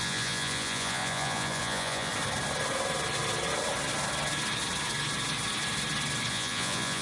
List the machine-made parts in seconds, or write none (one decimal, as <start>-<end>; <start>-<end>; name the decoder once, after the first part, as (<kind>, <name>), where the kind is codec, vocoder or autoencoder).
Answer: 0.0-2.1 (vocoder, Vocos); 6.3-7.0